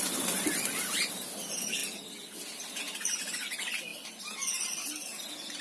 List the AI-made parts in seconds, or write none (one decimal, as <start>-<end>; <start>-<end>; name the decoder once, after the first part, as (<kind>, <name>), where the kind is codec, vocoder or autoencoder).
none